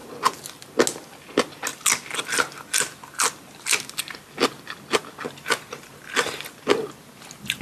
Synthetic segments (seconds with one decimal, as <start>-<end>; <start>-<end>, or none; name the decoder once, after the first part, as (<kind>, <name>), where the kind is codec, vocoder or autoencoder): none